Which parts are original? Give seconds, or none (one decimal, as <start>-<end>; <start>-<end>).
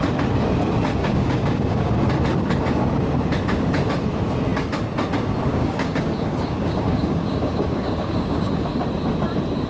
0.0-1.0; 2.1-5.5; 8.8-9.7